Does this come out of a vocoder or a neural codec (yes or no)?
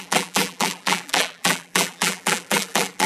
yes